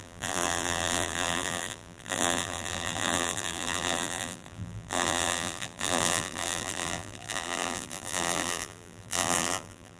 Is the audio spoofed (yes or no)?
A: yes